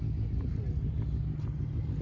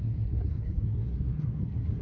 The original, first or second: first